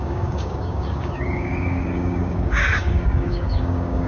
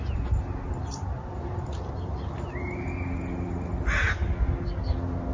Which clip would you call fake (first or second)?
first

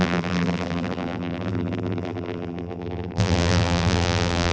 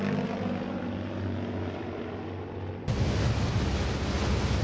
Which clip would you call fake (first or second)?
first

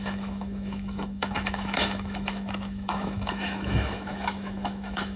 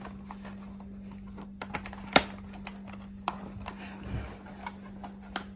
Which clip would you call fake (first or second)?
first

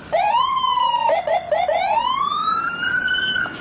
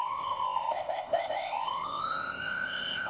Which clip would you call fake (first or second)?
second